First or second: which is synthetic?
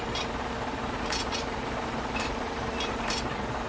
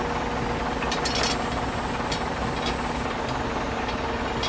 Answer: first